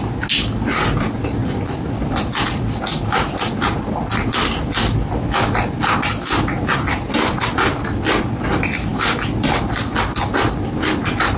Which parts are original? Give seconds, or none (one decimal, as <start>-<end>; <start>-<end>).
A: 0.0-1.4; 2.4-11.4